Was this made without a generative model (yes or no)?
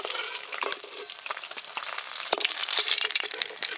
no